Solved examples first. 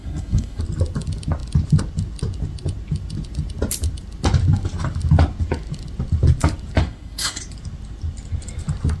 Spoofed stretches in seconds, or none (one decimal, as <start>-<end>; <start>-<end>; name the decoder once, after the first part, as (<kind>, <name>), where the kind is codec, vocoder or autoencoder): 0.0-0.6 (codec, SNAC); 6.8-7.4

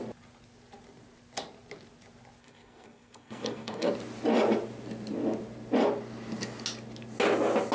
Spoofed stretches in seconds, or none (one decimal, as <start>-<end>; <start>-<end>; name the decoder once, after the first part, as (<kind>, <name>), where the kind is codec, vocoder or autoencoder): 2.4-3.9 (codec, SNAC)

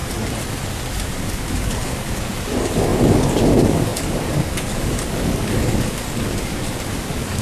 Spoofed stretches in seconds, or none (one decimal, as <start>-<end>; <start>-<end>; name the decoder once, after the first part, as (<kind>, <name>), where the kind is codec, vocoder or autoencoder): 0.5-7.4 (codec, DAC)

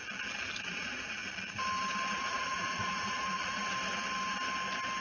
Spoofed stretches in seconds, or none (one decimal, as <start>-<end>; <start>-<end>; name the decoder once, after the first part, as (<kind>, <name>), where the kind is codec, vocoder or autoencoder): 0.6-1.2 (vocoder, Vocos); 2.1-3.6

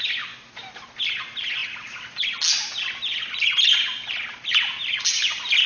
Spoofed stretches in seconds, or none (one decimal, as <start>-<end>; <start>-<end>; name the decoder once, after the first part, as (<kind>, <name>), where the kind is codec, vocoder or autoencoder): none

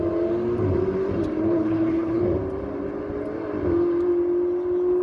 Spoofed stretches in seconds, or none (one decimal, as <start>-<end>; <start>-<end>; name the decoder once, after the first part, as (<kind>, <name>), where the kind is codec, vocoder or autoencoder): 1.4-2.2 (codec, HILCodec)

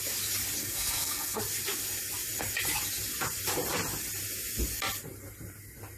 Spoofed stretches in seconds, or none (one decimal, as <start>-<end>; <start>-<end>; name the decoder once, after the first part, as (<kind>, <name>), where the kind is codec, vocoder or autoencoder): 0.6-1.4 (codec, SNAC)